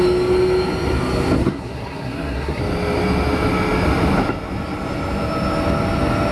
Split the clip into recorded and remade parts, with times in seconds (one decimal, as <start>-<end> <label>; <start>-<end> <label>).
0.0-1.4 recorded; 1.4-2.6 remade; 2.6-6.3 recorded